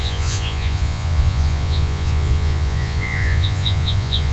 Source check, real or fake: fake